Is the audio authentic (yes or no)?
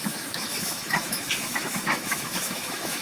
no